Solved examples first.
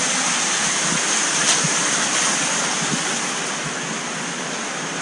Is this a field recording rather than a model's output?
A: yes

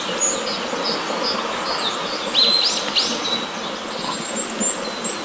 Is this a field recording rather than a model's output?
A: yes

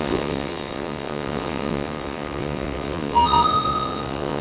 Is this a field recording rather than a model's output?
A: no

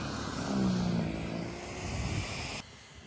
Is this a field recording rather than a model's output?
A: yes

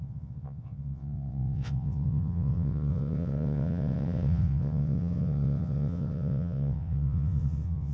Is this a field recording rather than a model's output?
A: no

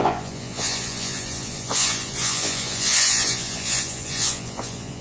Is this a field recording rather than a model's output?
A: no